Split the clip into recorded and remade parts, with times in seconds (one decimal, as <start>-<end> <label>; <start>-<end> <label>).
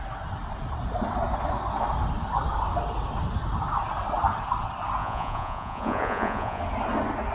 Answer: 0.0-5.0 recorded; 5.0-6.6 remade; 6.6-7.3 recorded